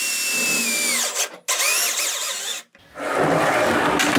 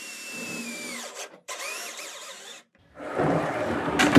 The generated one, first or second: second